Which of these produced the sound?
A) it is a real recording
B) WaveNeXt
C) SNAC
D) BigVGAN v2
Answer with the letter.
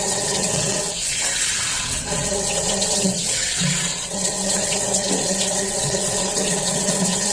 B